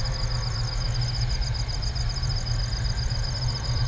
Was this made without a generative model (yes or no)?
yes